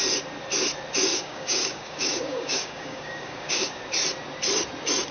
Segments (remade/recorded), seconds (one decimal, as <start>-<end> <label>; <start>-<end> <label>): 0.0-1.1 recorded; 1.1-3.8 remade; 3.8-5.1 recorded